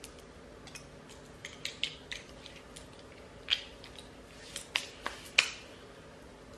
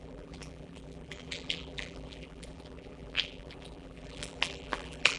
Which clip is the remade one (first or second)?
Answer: second